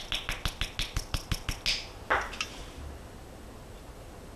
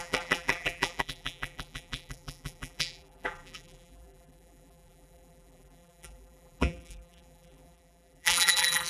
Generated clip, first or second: second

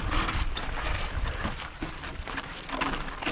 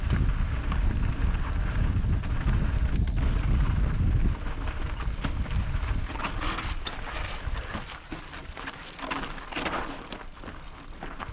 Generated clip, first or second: first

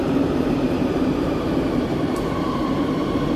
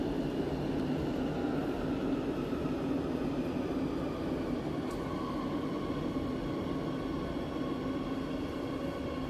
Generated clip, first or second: first